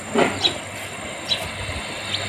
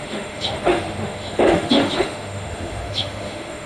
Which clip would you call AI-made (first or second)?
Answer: second